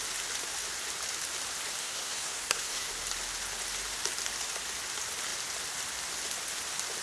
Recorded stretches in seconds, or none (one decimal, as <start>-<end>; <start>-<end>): 0.0-1.8; 2.9-7.0